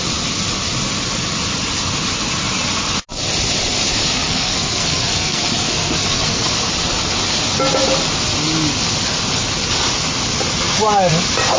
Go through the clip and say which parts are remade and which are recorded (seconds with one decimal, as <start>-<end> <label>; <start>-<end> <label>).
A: 0.0-4.0 recorded; 4.0-6.5 remade; 6.5-11.6 recorded